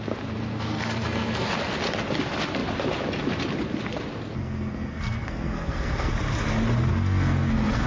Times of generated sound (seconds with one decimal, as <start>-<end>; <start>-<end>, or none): 0.5-1.5; 4.4-6.1; 6.9-7.9